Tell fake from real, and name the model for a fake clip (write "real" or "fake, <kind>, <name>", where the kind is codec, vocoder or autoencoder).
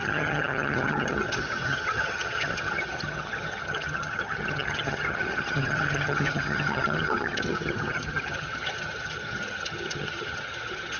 fake, vocoder, HiFi-GAN